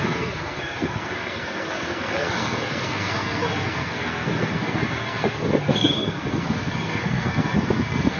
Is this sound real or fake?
fake